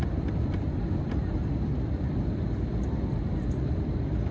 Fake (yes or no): yes